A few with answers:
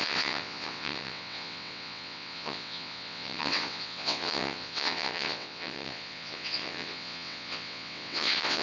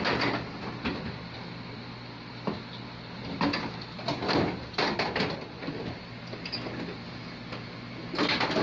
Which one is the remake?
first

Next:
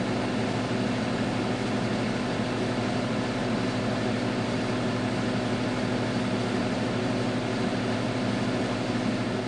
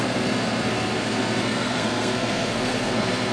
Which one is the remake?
second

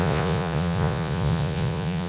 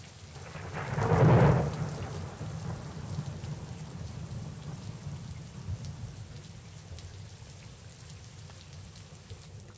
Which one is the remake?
first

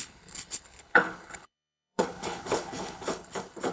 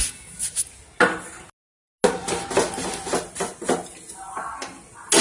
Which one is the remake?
first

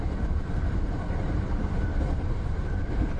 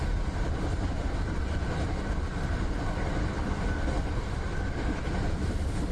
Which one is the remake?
first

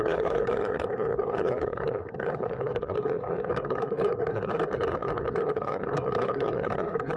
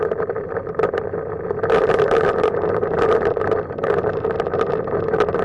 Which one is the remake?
first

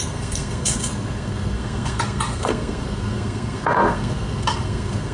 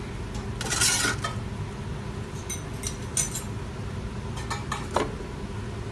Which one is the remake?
first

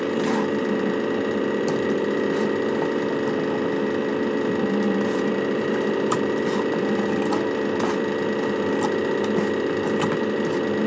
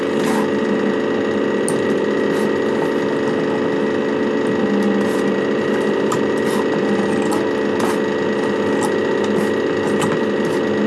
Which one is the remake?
first